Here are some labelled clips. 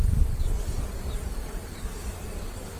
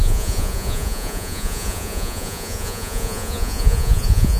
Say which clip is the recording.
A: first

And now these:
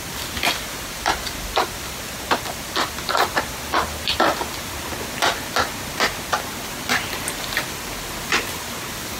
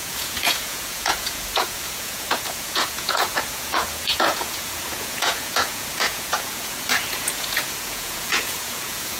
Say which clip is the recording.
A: first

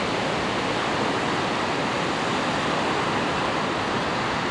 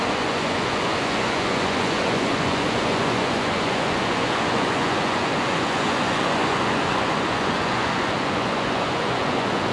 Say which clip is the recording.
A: first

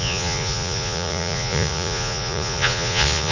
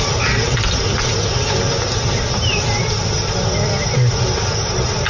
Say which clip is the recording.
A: second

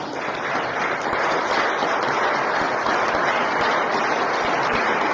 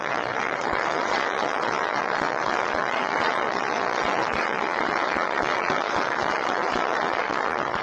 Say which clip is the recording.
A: first